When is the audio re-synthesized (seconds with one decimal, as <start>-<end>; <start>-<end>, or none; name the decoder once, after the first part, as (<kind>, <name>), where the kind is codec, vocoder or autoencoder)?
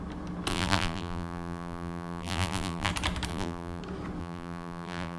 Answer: 0.5-2.9 (vocoder, BigVGAN v2); 3.3-3.8; 4.2-5.2